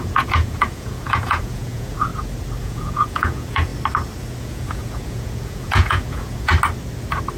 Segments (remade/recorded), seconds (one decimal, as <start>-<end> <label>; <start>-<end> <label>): 0.0-2.1 remade; 2.1-2.6 recorded; 2.6-3.7 remade; 3.7-4.4 recorded; 4.4-6.5 remade; 6.5-7.4 recorded